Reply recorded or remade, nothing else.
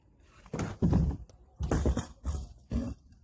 recorded